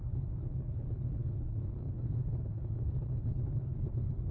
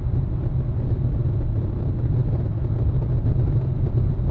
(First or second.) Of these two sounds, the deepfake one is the first